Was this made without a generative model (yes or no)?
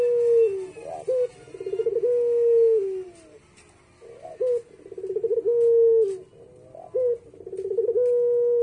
yes